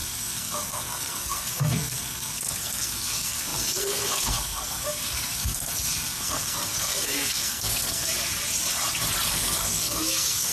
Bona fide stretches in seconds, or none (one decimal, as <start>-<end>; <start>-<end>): 8.1-9.3